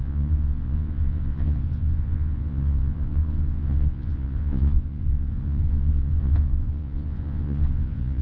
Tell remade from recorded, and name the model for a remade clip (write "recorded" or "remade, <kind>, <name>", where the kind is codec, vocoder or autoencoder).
remade, vocoder, Vocos